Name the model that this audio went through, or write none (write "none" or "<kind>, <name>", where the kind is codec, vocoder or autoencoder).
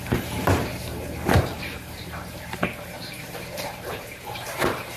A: vocoder, BigVGAN v2